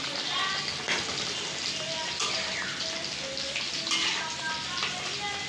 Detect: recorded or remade recorded